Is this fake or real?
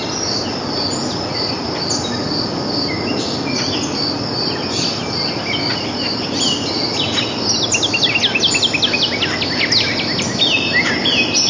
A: real